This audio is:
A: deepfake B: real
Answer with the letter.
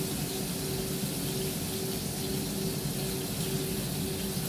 B